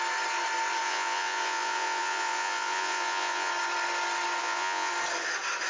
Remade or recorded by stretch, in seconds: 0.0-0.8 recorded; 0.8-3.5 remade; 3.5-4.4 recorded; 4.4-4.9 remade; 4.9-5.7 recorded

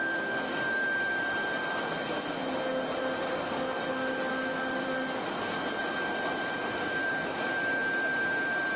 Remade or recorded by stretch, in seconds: 0.0-8.8 recorded

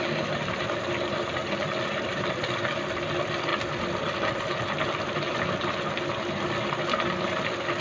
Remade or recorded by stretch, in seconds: 0.0-7.8 recorded

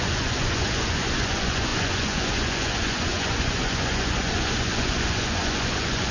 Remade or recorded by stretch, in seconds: 0.0-6.1 remade

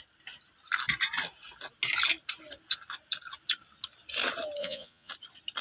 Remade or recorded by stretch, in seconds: 0.0-4.6 recorded; 4.6-5.1 remade; 5.1-5.6 recorded

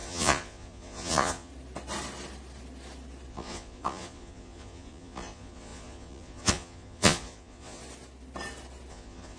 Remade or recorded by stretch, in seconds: 0.0-1.5 remade; 1.5-3.3 recorded; 3.3-7.8 remade; 7.8-8.9 recorded; 8.9-9.4 remade